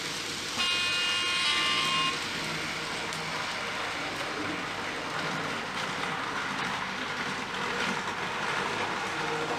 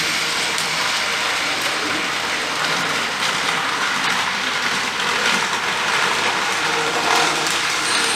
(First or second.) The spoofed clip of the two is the second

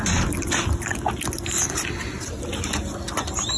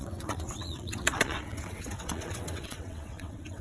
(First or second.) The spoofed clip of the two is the second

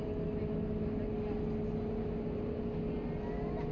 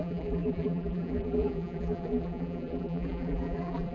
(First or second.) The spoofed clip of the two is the second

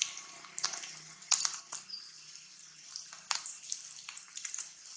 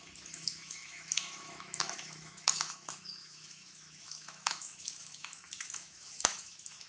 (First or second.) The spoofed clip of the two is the second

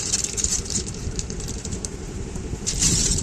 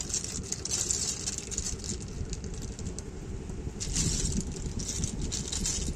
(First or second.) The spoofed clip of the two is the first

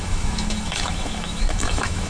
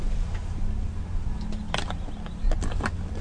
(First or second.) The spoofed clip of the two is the first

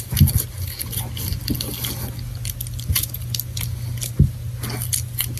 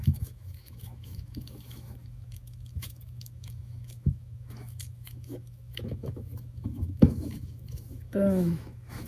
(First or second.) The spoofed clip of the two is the second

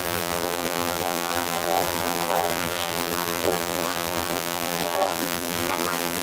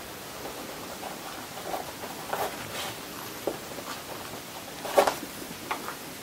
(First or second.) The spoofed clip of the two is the first